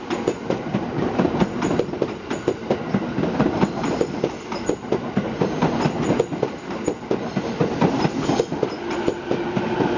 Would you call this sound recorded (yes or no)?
yes